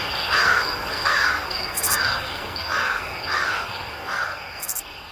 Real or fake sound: fake